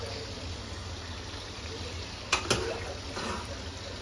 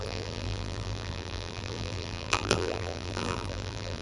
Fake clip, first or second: second